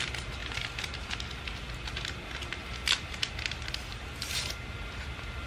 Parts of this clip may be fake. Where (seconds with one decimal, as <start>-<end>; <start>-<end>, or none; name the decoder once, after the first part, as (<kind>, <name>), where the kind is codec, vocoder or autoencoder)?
none